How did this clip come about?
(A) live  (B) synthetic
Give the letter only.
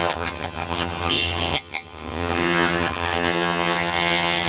B